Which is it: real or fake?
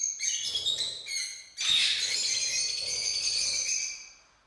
real